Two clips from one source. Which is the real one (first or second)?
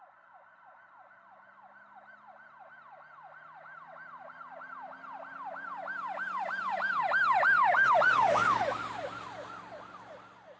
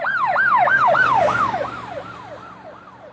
first